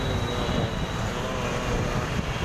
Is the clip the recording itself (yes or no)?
yes